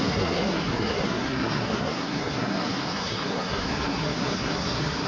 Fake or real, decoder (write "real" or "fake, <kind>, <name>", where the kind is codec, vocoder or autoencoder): fake, codec, SNAC